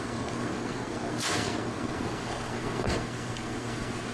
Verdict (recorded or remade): remade